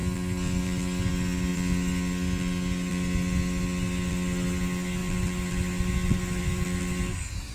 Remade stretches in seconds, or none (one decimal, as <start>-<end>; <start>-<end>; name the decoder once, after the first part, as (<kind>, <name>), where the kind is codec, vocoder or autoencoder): none